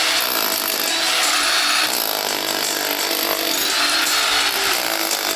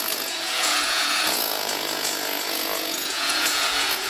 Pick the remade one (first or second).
second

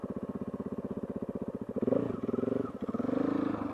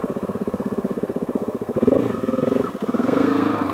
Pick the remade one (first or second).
second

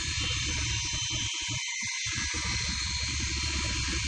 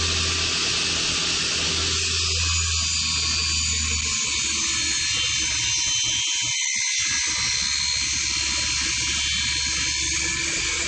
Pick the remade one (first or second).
first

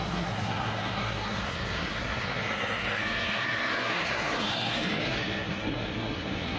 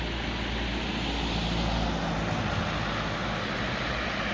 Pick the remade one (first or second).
first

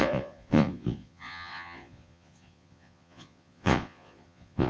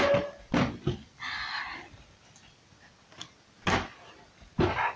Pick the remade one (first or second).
first